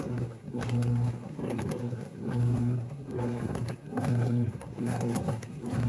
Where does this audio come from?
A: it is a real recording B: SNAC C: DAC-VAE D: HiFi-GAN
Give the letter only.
B